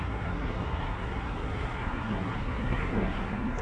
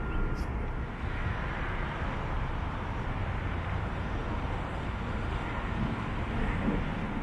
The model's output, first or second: first